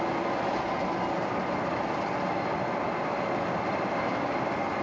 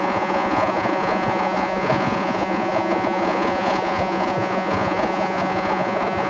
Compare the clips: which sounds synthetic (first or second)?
second